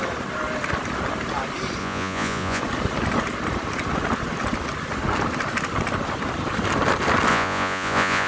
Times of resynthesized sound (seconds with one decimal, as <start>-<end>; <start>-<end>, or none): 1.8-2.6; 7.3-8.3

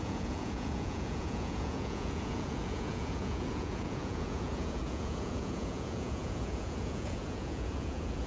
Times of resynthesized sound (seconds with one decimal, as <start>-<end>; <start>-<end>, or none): 0.0-8.3

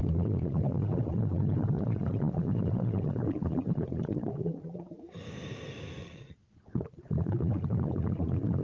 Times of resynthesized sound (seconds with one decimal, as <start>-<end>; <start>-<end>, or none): 0.0-5.0; 6.0-8.6

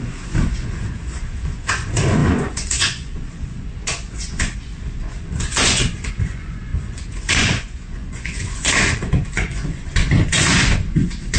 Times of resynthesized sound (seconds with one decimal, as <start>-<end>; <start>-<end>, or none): 0.0-11.4

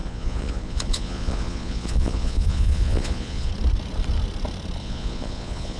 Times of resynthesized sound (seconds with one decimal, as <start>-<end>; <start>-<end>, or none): 0.0-3.5; 4.8-5.8

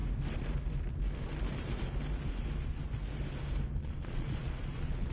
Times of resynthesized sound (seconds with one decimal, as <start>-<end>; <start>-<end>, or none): 3.8-5.1

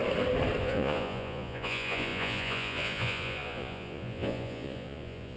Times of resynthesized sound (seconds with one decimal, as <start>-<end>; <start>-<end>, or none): 0.6-5.4

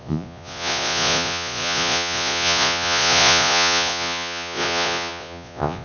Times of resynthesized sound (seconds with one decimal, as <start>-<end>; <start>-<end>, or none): 0.0-5.8